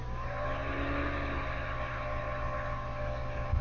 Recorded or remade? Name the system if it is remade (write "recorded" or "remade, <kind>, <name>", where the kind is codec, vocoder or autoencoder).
recorded